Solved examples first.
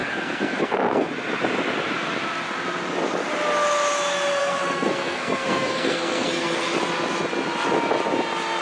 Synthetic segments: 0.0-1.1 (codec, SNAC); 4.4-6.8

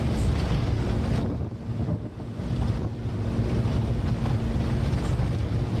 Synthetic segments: 1.8-2.4 (autoencoder, DAC-VAE)

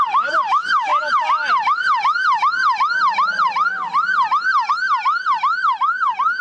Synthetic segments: none

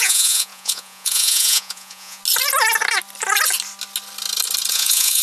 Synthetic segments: 0.0-2.2 (vocoder, Vocos); 4.7-5.2

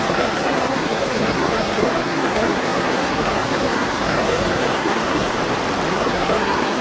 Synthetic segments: 0.0-5.4 (codec, SNAC); 5.9-6.8

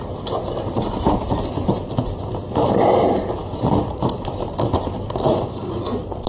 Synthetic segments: none